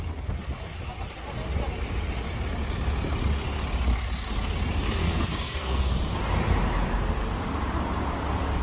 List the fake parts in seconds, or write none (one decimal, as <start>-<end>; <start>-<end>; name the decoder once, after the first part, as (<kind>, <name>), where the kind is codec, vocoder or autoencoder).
5.0-5.9 (codec, SNAC)